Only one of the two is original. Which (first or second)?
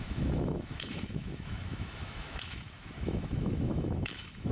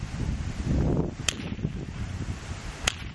second